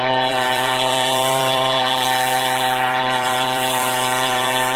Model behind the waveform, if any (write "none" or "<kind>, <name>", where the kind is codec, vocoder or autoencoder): vocoder, BigVGAN v2